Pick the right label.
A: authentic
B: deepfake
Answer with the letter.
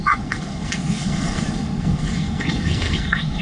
B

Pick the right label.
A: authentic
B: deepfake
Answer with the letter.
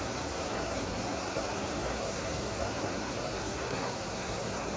B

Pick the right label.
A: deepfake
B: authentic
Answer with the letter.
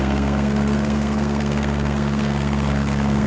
A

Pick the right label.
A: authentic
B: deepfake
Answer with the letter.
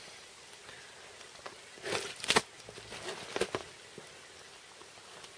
A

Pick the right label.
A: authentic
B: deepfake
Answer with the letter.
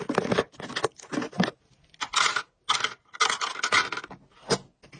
A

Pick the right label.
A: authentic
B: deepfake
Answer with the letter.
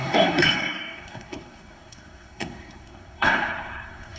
B